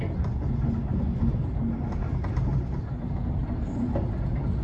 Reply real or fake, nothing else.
real